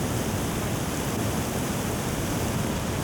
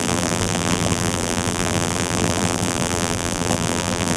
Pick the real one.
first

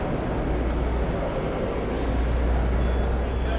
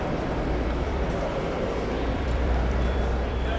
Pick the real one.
first